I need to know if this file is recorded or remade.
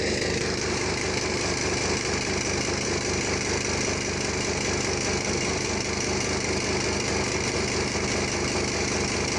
recorded